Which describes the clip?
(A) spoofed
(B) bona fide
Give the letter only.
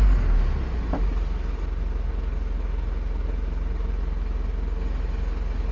B